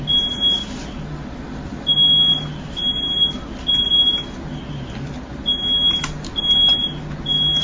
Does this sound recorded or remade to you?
recorded